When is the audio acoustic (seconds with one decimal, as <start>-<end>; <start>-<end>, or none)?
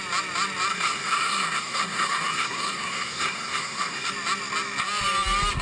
0.0-0.7; 4.1-5.6